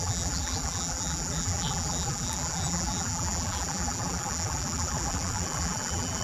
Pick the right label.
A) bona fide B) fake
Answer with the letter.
B